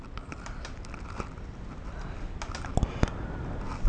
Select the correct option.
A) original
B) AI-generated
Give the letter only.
A